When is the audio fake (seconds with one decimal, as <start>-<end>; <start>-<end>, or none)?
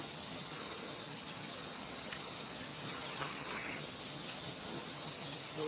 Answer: 0.0-5.7